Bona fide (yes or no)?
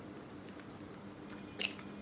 yes